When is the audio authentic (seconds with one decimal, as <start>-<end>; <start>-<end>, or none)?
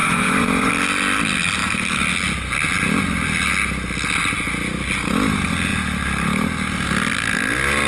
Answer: 0.7-7.9